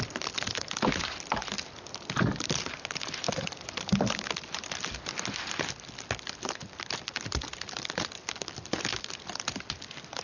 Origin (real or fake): real